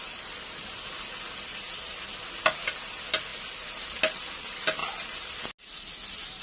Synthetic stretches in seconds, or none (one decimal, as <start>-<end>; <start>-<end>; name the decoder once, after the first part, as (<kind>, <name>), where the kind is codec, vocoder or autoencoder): none